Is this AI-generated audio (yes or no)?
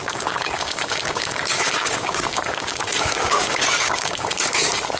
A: yes